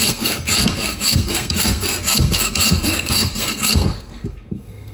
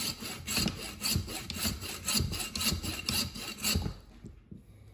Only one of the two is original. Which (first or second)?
second